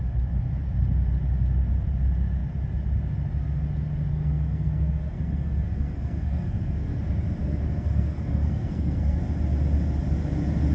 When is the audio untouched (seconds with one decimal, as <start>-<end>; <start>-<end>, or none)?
0.0-4.1; 7.0-7.4; 9.2-10.7